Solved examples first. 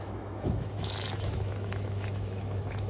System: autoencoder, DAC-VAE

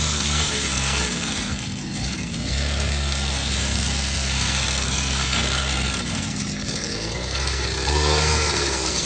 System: codec, SNAC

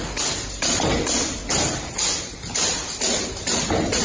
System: vocoder, BigVGAN v2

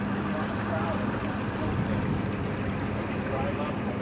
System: vocoder, BigVGAN v2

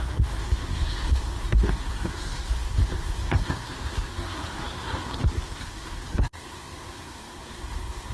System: codec, SNAC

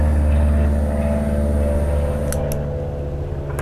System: none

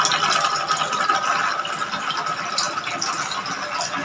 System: none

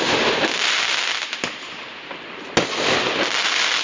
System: none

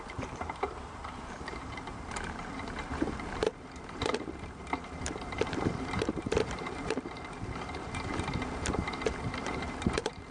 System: vocoder, BigVGAN v2